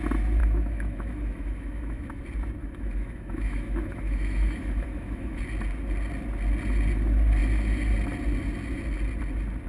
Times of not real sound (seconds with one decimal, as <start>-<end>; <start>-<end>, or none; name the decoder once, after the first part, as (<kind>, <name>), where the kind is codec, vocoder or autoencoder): 0.4-2.2 (autoencoder, DAC-VAE); 2.6-5.4